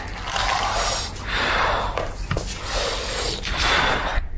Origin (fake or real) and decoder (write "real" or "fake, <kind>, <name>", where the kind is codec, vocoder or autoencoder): real